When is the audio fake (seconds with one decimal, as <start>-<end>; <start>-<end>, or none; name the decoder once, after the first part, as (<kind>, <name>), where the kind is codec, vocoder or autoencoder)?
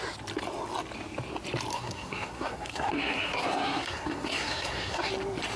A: 1.7-5.1 (codec, SNAC)